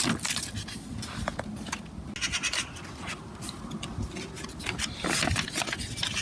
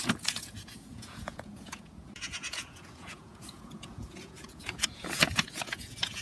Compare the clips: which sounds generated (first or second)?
second